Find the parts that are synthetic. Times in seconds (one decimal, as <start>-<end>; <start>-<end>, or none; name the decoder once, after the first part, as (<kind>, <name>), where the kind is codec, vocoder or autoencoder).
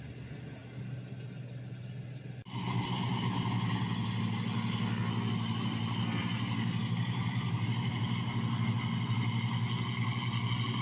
6.2-7.9 (vocoder, BigVGAN v2)